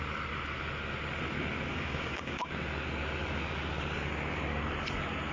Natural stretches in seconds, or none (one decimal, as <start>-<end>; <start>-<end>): 0.0-1.7; 2.5-5.3